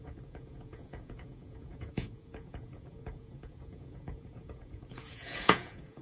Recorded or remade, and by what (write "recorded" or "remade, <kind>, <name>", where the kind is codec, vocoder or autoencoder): remade, vocoder, Vocos